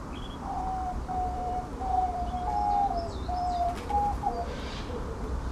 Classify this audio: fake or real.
fake